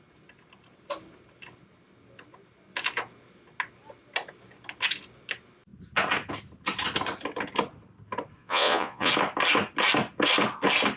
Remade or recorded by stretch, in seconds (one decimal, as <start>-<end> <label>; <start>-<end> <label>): 0.0-8.4 recorded; 8.4-9.1 remade; 9.1-11.0 recorded